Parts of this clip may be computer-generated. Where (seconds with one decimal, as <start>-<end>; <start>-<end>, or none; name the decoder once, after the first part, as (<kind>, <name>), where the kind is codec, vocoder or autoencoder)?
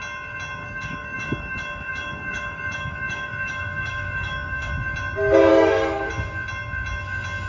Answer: 0.6-4.7 (codec, DAC); 5.5-6.1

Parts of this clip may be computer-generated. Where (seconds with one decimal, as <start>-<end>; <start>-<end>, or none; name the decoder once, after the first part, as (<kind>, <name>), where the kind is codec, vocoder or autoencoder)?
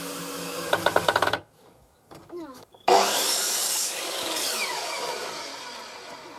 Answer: 0.0-5.5 (codec, DAC)